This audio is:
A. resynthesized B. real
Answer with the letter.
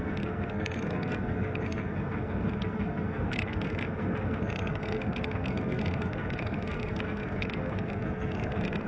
A